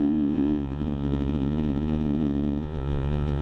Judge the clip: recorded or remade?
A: remade